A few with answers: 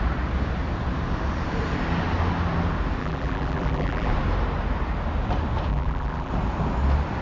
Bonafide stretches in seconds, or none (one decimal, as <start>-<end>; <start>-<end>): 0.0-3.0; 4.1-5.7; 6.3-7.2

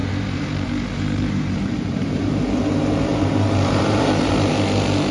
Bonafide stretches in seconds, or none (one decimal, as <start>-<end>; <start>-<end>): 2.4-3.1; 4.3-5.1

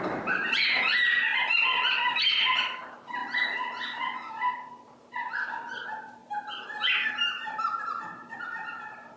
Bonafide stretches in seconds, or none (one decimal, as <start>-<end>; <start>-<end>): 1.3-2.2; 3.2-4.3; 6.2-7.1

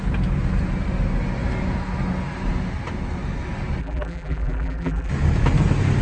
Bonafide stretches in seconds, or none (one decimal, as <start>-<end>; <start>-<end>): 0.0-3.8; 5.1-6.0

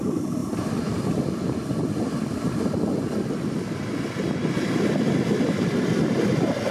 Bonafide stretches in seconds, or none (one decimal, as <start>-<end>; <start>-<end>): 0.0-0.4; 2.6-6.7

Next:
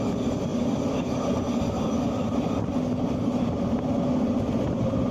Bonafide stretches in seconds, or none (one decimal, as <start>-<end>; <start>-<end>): 0.0-0.5; 1.4-5.1

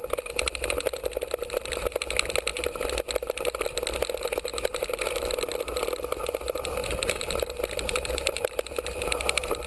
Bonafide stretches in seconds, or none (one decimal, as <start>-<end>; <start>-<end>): 0.0-4.5; 5.2-6.8; 8.6-9.7